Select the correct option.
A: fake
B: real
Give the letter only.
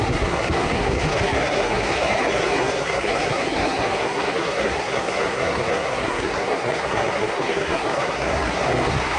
A